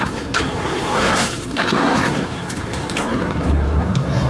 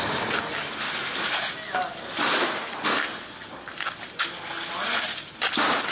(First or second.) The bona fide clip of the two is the second